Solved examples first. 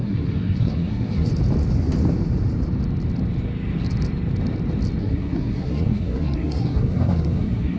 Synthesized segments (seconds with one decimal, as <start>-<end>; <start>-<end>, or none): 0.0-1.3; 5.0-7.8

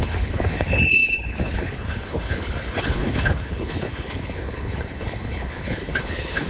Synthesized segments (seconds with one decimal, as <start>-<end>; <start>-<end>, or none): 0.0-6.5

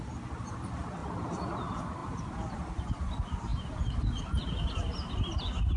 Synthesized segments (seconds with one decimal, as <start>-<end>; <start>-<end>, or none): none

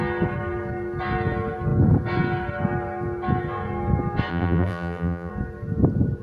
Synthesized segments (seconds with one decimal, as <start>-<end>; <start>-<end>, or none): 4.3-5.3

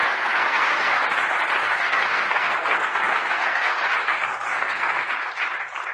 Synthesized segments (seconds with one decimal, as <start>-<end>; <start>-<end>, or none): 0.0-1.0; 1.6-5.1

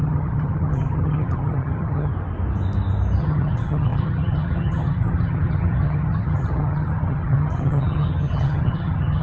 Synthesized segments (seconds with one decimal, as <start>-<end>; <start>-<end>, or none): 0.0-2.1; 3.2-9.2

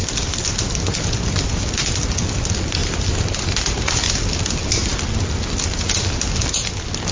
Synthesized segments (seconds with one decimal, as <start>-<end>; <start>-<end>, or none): 2.8-4.1